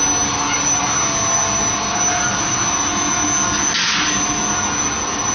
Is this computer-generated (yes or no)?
no